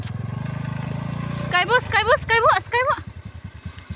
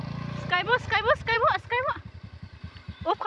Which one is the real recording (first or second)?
first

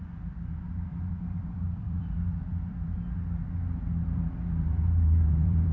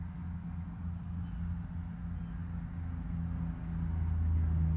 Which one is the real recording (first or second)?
second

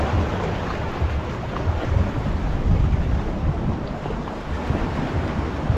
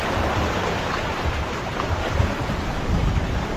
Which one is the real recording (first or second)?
first